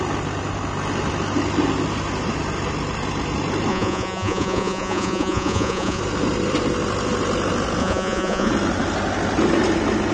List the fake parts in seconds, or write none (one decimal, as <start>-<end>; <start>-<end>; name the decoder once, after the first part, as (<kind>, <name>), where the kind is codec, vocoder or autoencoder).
3.7-6.0 (vocoder, Vocos); 7.8-8.5